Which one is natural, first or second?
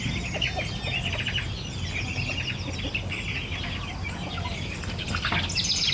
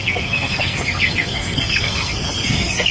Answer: first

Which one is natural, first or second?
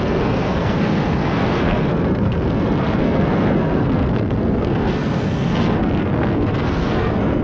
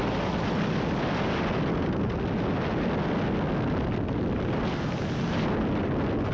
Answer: second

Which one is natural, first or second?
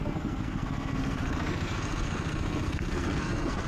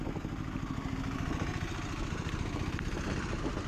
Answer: second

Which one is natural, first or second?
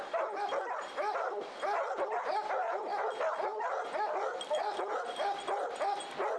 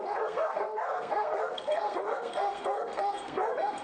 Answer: first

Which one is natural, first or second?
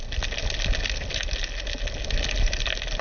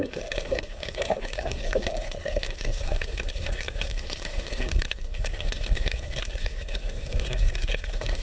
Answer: first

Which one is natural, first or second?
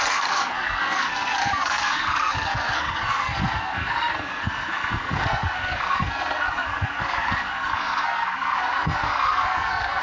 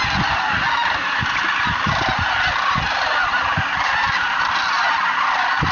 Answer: second